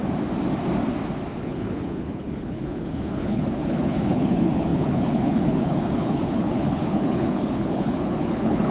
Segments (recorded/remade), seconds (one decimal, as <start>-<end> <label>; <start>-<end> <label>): 0.0-1.4 recorded; 1.4-8.7 remade